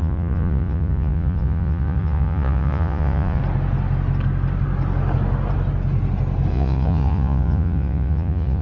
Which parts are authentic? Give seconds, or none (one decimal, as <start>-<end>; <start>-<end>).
3.4-6.5